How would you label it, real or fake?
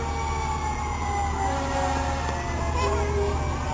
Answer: real